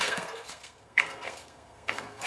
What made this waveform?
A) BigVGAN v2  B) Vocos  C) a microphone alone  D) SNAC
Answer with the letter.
D